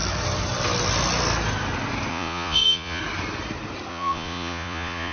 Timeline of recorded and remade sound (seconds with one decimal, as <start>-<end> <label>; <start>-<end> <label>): 0.0-2.1 recorded; 2.1-3.0 remade; 3.0-3.9 recorded; 3.9-5.1 remade